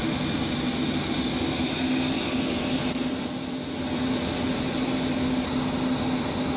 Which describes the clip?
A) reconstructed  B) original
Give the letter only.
B